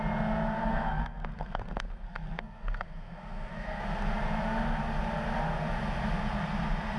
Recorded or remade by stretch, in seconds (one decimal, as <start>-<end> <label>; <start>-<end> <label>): 0.0-0.6 recorded; 0.6-3.8 remade; 3.8-7.0 recorded